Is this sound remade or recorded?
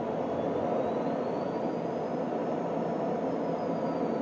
recorded